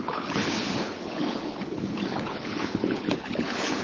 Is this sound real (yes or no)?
no